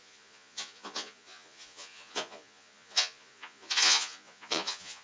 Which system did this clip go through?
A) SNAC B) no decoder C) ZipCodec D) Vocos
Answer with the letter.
D